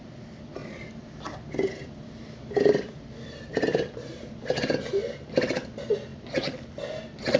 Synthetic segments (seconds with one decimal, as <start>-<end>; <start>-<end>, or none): none